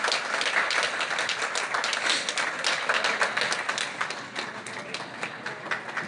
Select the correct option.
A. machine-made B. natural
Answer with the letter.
B